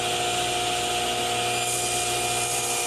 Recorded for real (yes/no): yes